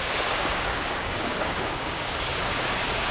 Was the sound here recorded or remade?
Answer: remade